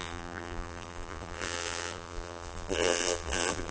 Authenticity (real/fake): fake